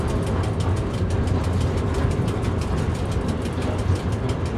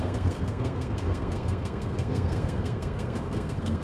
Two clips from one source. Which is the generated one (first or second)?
second